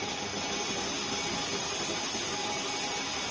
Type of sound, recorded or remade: recorded